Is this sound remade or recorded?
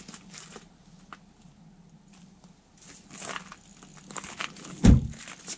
recorded